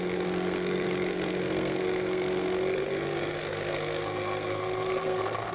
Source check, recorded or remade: remade